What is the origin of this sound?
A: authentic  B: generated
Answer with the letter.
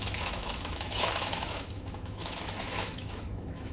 B